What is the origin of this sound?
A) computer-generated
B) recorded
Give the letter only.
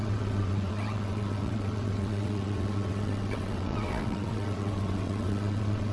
A